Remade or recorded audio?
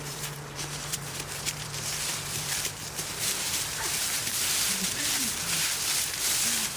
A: remade